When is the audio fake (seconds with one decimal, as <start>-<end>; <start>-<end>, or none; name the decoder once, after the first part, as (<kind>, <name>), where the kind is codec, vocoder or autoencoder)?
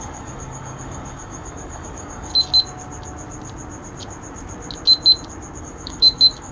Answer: 0.0-2.3 (codec, DAC); 5.6-6.5